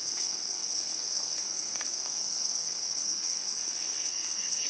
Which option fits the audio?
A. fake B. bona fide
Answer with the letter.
A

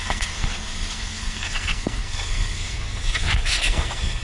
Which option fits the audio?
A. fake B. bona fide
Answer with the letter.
A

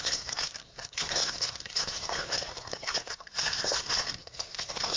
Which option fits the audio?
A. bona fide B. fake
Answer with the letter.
B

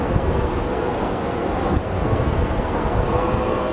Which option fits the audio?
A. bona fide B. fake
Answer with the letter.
B